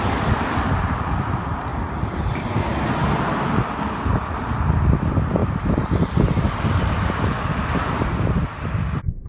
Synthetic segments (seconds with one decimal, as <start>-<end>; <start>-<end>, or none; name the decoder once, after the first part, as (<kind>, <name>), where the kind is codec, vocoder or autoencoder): none